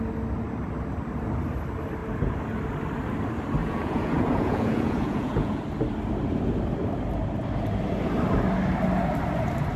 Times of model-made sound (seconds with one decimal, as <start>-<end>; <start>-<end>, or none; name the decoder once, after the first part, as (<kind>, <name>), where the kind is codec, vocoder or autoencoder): 3.6-5.6 (vocoder, Vocos)